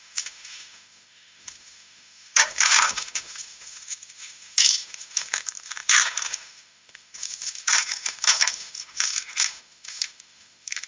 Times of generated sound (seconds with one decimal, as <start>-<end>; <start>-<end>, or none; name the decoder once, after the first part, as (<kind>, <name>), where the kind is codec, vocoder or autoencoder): 0.0-10.9 (autoencoder, DAC-VAE)